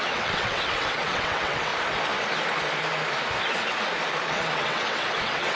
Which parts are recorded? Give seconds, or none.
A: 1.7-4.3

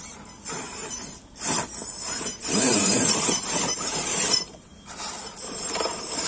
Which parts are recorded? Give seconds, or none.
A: 0.0-6.3

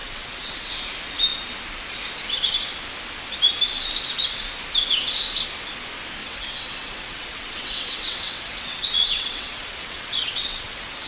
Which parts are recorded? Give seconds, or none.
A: 0.7-6.2

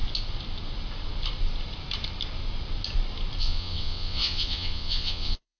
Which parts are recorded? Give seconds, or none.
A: 0.0-3.4

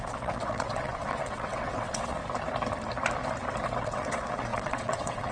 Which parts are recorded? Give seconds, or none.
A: 2.2-3.8

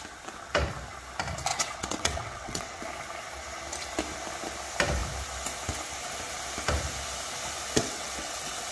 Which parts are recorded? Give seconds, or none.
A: 0.0-1.5; 2.8-7.8

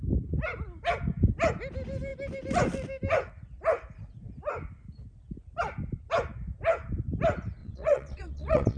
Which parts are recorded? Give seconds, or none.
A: 0.0-7.6